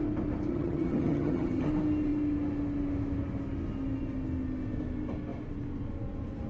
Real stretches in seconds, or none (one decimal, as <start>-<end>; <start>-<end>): 0.0-0.5; 1.7-6.5